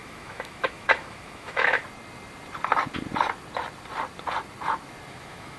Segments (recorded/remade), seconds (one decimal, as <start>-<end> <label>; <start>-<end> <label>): 0.0-1.8 remade; 1.8-5.1 recorded; 5.1-5.6 remade